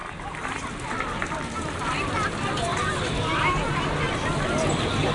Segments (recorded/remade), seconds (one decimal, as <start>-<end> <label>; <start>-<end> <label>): 0.0-2.1 remade; 2.1-2.7 recorded; 2.7-3.3 remade; 3.3-5.1 recorded